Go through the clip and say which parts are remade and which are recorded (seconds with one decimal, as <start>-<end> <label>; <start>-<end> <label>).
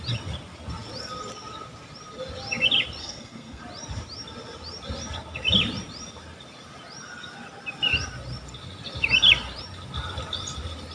0.0-3.0 recorded; 3.0-3.6 remade; 3.6-10.9 recorded